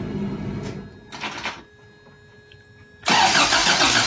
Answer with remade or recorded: recorded